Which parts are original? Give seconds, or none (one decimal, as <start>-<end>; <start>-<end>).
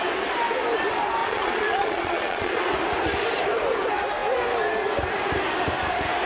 0.0-1.2; 2.7-6.3